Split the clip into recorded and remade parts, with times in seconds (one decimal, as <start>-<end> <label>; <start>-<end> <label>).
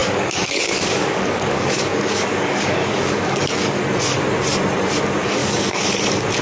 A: 0.0-3.8 remade; 3.8-5.4 recorded; 5.4-5.9 remade; 5.9-6.4 recorded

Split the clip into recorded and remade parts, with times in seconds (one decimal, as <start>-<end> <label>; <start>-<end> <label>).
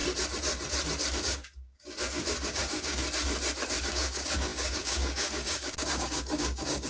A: 0.0-1.2 recorded; 1.2-3.0 remade; 3.0-3.9 recorded; 3.9-6.9 remade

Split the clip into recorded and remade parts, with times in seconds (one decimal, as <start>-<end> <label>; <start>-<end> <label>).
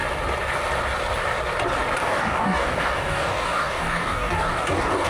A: 0.0-2.0 recorded; 2.0-5.1 remade